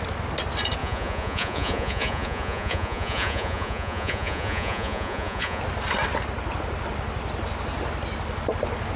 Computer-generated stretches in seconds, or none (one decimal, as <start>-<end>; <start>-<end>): 0.8-5.6